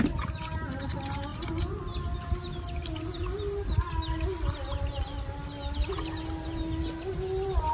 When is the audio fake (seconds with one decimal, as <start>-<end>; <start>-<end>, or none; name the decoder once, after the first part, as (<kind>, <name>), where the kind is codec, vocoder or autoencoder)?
none